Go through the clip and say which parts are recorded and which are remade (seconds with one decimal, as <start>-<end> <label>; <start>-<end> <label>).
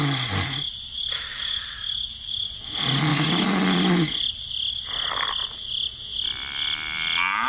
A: 0.0-7.5 recorded